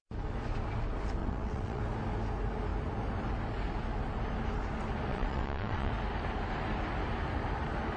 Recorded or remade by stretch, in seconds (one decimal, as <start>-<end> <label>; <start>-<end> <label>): 0.0-1.2 recorded; 1.2-1.8 remade; 1.8-5.1 recorded; 5.1-5.9 remade; 5.9-8.0 recorded